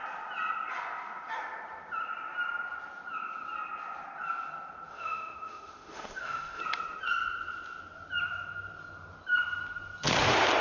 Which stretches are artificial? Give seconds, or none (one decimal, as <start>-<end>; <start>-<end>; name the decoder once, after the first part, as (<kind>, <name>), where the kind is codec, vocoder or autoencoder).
4.9-6.6 (autoencoder, DAC-VAE)